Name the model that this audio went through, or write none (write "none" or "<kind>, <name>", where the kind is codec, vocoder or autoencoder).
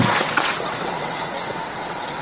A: vocoder, WaveNeXt